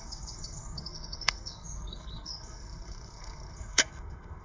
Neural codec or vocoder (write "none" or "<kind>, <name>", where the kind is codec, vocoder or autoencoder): codec, SNAC